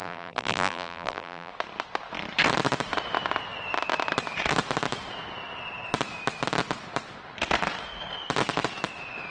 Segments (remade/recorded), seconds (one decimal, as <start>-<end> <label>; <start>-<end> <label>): 0.0-1.5 remade; 1.5-9.3 recorded